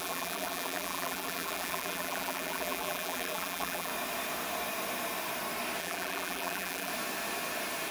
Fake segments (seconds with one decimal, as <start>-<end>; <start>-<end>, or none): 0.0-3.9; 5.8-6.9